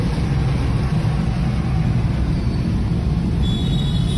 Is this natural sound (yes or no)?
yes